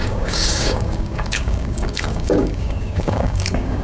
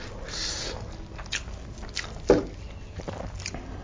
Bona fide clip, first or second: second